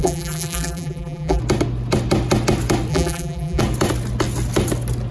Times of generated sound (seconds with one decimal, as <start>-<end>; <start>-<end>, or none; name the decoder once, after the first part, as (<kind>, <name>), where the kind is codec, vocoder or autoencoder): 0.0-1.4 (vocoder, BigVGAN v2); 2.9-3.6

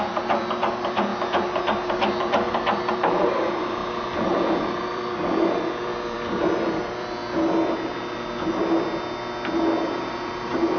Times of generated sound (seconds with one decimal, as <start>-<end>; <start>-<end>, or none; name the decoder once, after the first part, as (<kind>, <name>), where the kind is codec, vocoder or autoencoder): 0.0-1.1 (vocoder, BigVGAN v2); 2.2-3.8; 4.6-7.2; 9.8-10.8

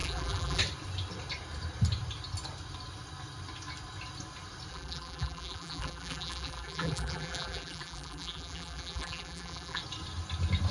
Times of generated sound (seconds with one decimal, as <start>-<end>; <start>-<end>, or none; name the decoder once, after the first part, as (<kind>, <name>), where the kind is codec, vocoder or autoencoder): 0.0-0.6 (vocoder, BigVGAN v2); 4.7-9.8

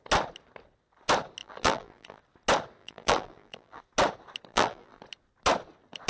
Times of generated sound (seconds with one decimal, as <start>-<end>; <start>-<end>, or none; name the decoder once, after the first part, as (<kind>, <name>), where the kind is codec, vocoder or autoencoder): 1.4-2.2 (vocoder, BigVGAN v2); 2.8-3.8; 4.5-5.0

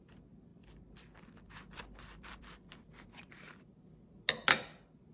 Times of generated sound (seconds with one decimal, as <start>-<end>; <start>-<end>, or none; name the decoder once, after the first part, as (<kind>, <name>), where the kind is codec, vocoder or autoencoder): 0.5-3.6 (vocoder, BigVGAN v2)

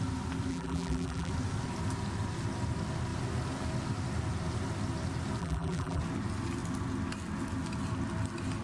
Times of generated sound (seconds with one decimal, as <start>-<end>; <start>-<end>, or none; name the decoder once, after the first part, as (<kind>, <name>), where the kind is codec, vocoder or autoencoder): 0.5-1.3 (vocoder, BigVGAN v2); 5.4-6.0

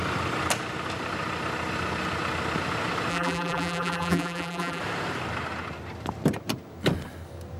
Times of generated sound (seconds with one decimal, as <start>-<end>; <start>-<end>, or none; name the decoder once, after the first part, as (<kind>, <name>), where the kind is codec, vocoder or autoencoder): 3.1-4.8 (vocoder, BigVGAN v2)